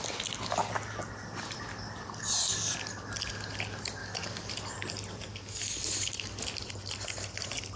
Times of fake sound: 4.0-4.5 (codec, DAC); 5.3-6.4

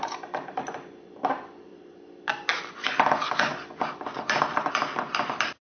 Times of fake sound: none

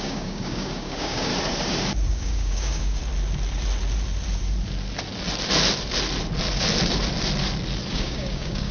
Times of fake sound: 0.0-1.3 (codec, DAC); 2.1-3.0; 7.9-8.7

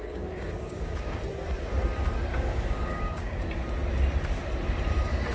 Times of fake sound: 0.0-1.2 (codec, DAC); 2.3-3.4

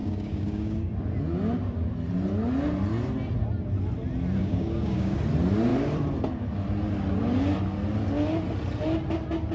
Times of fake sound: 0.0-0.9 (codec, DAC); 4.4-5.2

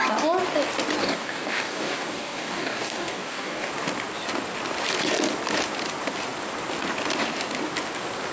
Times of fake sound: 1.0-3.7 (codec, DAC)